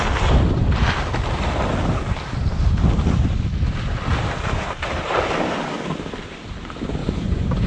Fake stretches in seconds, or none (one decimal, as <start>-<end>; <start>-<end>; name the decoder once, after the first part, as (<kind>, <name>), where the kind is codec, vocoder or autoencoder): 7.0-7.7 (vocoder, Vocos)